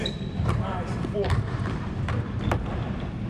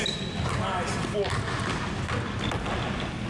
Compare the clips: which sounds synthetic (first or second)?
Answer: first